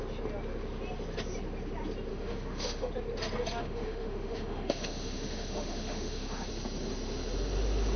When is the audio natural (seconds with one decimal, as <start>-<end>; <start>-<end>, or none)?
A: 0.0-2.1; 2.9-3.6; 6.5-8.0